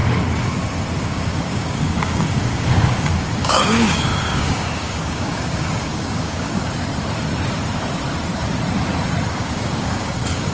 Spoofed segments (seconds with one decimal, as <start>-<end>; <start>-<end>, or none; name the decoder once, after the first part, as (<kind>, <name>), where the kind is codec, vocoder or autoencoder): 1.0-6.7 (codec, DAC); 9.3-10.5

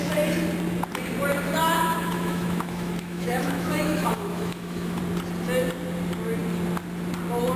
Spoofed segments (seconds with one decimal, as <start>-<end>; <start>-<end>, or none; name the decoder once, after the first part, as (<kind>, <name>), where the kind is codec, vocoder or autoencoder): 1.6-5.0 (autoencoder, DAC-VAE)

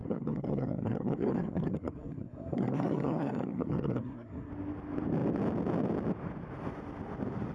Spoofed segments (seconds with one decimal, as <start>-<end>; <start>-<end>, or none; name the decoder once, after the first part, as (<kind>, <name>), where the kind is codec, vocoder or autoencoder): 0.0-4.5 (codec, SNAC)

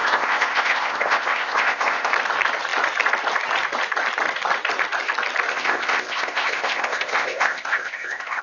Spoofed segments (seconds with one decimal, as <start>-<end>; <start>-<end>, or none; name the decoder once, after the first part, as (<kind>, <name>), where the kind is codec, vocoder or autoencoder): 0.0-2.1 (codec, ZipCodec); 5.5-8.4

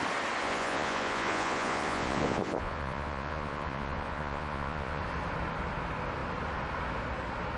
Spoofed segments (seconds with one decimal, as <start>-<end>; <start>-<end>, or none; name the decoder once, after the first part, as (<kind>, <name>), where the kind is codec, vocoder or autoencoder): 0.4-5.0 (vocoder, Vocos)

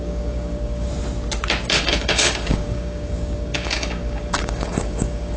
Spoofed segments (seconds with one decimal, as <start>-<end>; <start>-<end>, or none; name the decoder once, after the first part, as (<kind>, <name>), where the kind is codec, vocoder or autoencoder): 0.0-0.9 (codec, DAC); 1.8-5.4